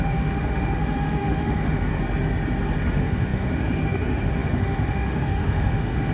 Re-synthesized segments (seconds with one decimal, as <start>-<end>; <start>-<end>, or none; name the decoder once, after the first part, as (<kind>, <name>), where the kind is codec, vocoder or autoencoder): 0.0-2.0 (autoencoder, DAC-VAE); 2.8-6.1